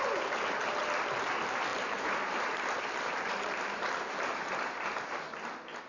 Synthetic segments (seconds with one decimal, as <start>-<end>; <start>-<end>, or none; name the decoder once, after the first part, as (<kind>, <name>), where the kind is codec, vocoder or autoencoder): 1.7-5.1 (vocoder, BigVGAN v2)